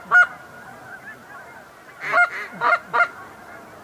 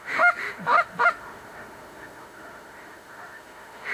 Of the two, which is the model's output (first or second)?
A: second